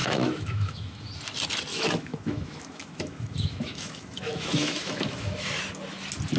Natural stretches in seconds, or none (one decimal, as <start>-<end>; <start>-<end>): 1.1-1.7; 5.5-6.4